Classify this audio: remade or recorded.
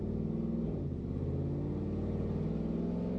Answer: recorded